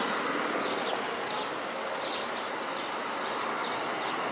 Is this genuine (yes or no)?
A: yes